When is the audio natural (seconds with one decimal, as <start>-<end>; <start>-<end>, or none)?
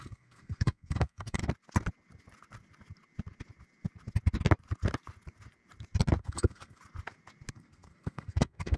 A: 1.4-6.2; 6.8-7.5